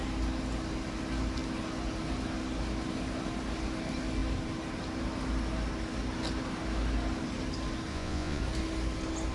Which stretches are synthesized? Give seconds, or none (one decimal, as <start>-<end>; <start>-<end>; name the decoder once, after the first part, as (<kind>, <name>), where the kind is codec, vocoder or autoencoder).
7.9-8.4 (vocoder, Vocos)